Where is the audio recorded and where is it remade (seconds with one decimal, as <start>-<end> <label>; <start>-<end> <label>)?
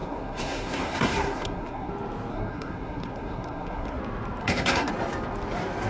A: 0.0-1.9 remade; 1.9-2.3 recorded; 2.3-4.0 remade; 4.0-4.4 recorded; 4.4-4.9 remade; 4.9-5.9 recorded